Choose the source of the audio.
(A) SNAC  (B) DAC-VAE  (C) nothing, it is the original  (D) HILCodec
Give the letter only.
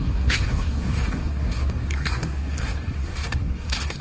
A